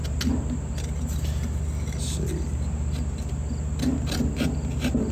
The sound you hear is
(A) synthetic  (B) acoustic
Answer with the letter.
B